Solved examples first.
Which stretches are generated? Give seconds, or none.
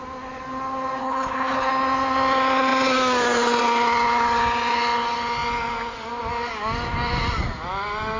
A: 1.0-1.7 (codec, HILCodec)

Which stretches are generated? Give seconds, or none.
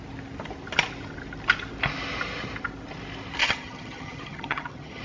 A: 3.4-5.0 (vocoder, HiFi-GAN)